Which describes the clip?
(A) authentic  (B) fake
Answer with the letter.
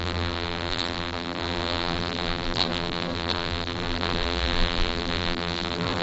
B